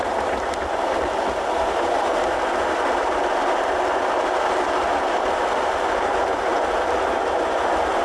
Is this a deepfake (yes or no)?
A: no